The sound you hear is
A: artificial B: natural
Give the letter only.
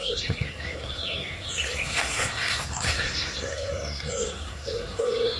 A